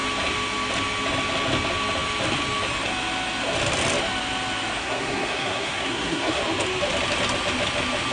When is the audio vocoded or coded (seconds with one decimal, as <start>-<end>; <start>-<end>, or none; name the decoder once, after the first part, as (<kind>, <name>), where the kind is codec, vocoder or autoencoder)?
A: 4.8-6.4 (codec, SNAC)